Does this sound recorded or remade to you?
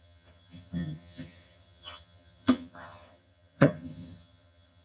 remade